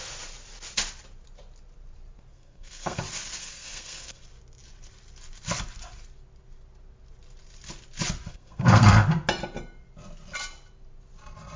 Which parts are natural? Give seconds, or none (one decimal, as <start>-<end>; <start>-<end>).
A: 0.0-2.3; 3.0-3.4; 4.2-8.3; 9.1-11.6